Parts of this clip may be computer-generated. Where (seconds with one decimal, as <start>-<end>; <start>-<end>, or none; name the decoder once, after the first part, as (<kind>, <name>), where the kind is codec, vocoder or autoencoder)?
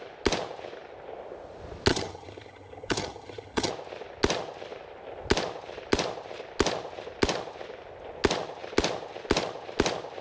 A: 1.9-3.7 (vocoder, HiFi-GAN)